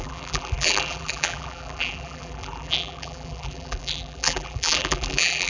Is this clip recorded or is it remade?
remade